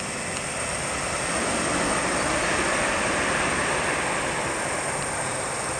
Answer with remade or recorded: recorded